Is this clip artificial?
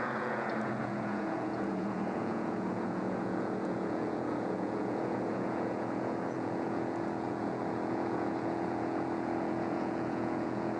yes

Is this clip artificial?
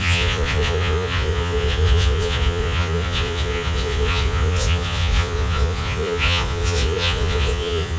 yes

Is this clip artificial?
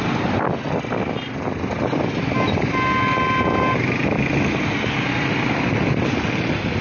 no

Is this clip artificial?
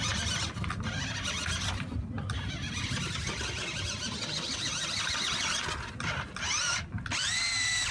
no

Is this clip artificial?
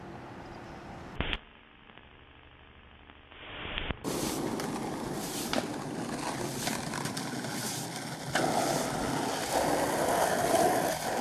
no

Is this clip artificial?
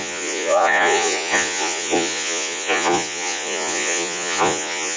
yes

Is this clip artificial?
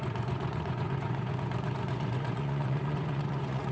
yes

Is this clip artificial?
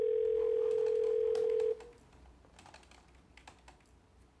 no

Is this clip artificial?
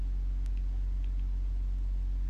no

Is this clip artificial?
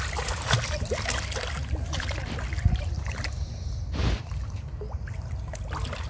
no